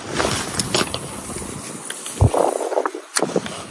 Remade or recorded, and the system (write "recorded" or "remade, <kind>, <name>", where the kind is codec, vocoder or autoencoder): recorded